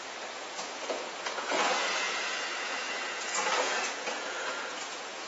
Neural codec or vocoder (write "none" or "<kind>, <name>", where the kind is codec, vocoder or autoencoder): vocoder, Vocos